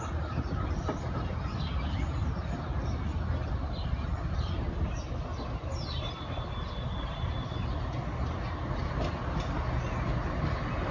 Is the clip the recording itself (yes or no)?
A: yes